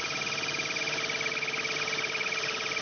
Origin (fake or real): real